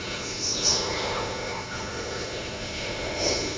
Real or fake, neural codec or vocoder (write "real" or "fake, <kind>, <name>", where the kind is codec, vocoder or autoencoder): fake, autoencoder, DAC-VAE